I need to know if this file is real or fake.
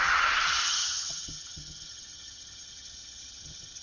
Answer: fake